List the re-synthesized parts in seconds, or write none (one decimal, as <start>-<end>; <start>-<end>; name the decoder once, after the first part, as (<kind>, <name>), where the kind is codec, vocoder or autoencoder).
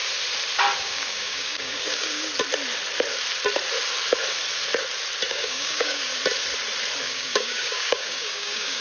0.8-2.3 (codec, DAC); 5.3-6.1; 7.0-8.8